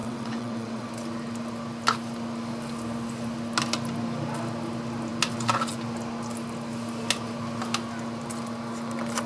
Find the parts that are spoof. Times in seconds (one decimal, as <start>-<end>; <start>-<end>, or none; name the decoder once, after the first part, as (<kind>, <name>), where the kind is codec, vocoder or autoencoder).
0.0-0.9 (vocoder, WaveNeXt)